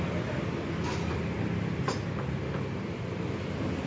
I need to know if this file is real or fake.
real